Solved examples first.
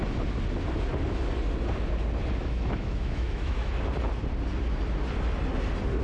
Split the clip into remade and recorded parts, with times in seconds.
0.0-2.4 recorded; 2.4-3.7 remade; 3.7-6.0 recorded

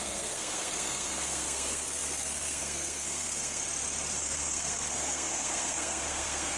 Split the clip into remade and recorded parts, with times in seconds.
0.0-3.6 remade; 3.6-4.1 recorded; 4.1-6.6 remade

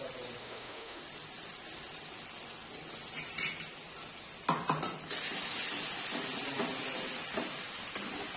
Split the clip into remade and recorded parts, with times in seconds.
0.0-0.4 recorded; 0.4-1.0 remade; 1.0-8.4 recorded

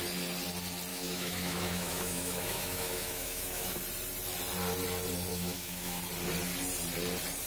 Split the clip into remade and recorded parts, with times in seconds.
0.0-0.9 recorded; 0.9-3.8 remade; 3.8-5.3 recorded; 5.3-6.0 remade; 6.0-7.5 recorded